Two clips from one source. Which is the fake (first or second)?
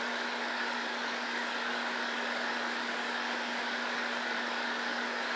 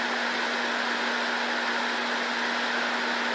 first